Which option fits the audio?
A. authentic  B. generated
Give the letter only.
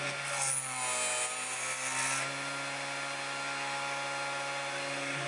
A